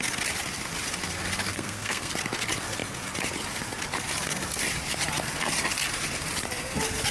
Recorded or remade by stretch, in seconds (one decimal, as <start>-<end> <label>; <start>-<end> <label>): 0.0-1.5 recorded; 1.5-2.1 remade; 2.1-7.1 recorded